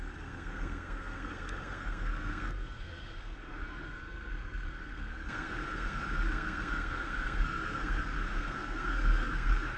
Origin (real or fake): fake